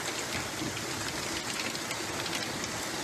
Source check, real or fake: real